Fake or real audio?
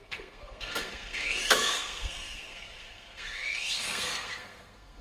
fake